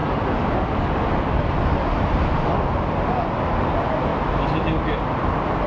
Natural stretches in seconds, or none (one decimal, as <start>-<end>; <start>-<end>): 0.0-5.7